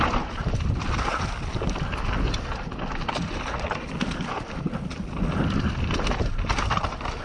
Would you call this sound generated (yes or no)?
no